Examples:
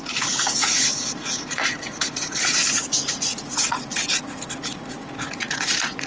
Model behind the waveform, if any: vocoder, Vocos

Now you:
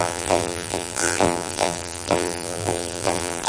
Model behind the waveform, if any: vocoder, BigVGAN v2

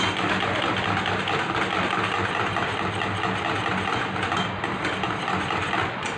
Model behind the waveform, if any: none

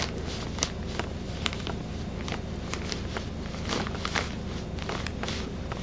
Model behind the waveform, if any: none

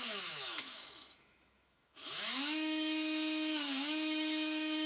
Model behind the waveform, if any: autoencoder, DAC-VAE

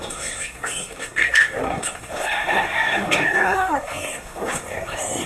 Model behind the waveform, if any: codec, SNAC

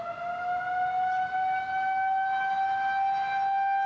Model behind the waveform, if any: none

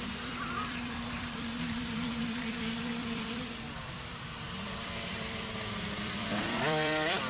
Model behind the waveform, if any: vocoder, BigVGAN v2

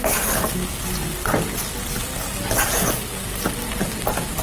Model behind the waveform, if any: none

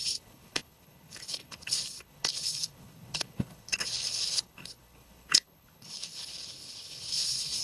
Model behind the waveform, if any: codec, HILCodec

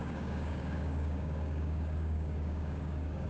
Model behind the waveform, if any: codec, DAC